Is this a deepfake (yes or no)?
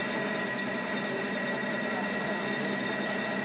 no